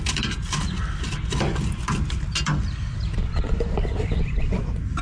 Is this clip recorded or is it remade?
recorded